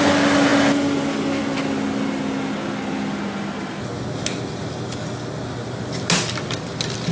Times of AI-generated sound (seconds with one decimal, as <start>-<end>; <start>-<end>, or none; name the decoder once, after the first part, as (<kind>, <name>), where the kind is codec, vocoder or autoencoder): none